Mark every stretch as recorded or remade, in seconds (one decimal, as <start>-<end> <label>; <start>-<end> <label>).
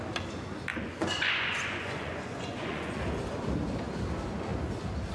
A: 0.0-0.7 recorded; 0.7-3.0 remade; 3.0-5.1 recorded